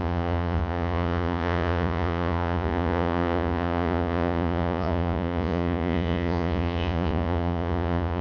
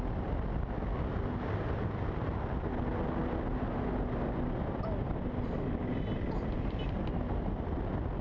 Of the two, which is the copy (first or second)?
first